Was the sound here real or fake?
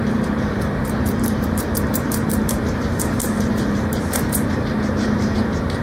fake